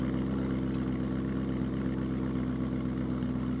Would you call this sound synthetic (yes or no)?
no